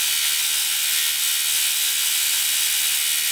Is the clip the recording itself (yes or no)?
yes